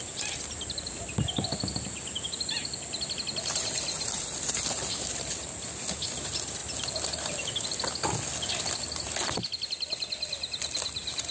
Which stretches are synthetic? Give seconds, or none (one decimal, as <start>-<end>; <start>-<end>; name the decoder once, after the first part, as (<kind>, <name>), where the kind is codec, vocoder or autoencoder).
none